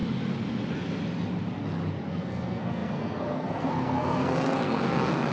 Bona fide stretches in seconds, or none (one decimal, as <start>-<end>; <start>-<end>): 0.0-2.1